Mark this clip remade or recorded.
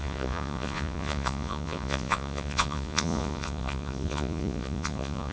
remade